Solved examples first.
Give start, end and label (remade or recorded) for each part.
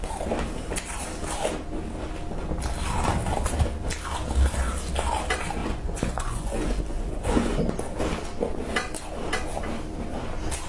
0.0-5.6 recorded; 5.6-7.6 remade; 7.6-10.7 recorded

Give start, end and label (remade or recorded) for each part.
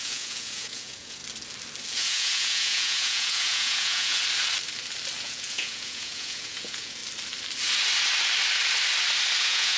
0.0-1.2 remade; 1.2-1.9 recorded; 1.9-4.2 remade; 4.2-5.2 recorded; 5.2-7.0 remade; 7.0-9.4 recorded; 9.4-9.8 remade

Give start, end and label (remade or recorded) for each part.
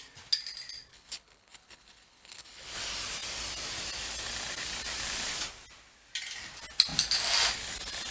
0.0-0.9 recorded; 0.9-2.8 remade; 2.8-8.1 recorded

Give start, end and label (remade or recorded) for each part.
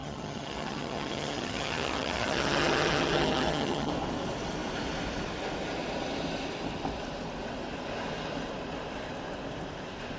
0.0-3.9 remade; 3.9-10.2 recorded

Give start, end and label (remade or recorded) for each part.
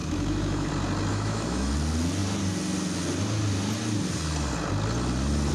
0.0-0.7 remade; 0.7-1.1 recorded; 1.1-1.7 remade; 1.7-5.5 recorded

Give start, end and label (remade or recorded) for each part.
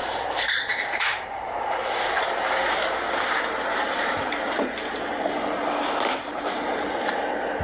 0.0-2.0 remade; 2.0-3.7 recorded; 3.7-6.9 remade; 6.9-7.6 recorded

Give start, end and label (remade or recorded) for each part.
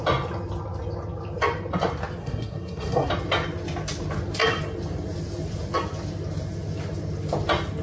0.0-2.2 recorded; 2.2-3.1 remade; 3.1-7.8 recorded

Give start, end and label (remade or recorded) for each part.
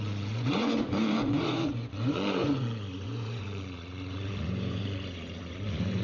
0.0-6.0 remade